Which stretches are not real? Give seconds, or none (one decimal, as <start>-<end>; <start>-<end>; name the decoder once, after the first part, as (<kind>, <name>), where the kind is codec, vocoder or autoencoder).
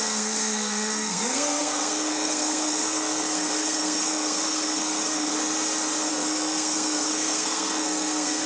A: 0.0-5.3 (codec, SNAC); 6.1-8.5